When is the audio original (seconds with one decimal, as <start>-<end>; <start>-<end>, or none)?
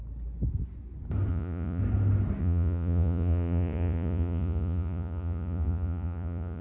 0.0-1.3; 1.8-2.4